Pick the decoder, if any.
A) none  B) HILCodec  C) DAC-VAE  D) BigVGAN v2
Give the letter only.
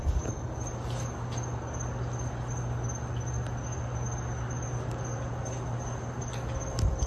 A